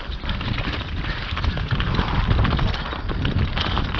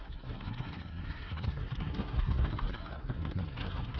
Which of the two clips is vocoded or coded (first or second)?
second